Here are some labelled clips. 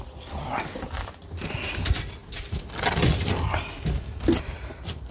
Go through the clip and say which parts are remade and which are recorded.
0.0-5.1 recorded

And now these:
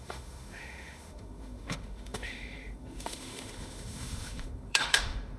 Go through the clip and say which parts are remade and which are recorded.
0.0-5.4 remade

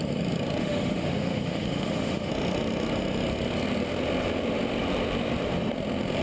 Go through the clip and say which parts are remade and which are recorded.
0.0-0.6 recorded; 0.6-2.3 remade; 2.3-6.2 recorded